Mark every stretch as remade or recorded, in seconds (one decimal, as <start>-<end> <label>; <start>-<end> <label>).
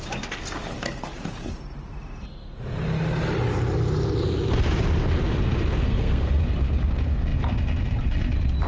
0.0-5.8 recorded; 5.8-6.4 remade; 6.4-8.7 recorded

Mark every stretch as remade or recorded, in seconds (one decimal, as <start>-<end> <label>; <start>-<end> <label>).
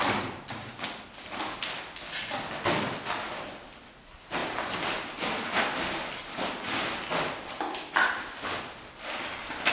0.0-9.7 recorded